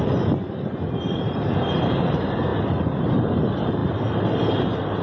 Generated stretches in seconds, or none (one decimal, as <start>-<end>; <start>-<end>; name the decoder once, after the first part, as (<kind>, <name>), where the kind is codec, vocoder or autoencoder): 0.0-2.5 (vocoder, BigVGAN v2); 3.1-5.0